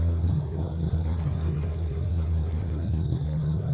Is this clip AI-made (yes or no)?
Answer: yes